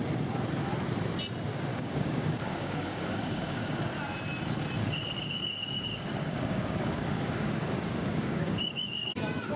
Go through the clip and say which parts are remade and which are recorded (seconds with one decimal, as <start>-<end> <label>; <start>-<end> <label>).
0.0-1.7 recorded; 1.7-3.8 remade; 3.8-4.8 recorded; 4.8-9.2 remade; 9.2-9.6 recorded